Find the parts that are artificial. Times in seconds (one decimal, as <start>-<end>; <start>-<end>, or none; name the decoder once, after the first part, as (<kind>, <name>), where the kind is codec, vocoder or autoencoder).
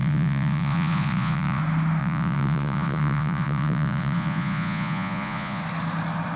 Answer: 0.0-1.6 (vocoder, Vocos); 2.0-5.6